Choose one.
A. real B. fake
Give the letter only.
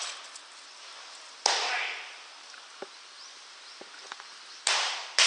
A